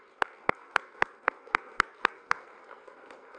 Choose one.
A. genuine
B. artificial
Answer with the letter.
B